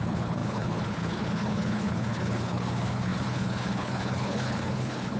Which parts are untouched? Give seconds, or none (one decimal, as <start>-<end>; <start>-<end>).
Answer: none